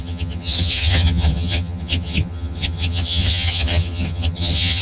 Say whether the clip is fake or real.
fake